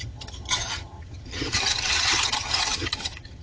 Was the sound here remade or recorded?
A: remade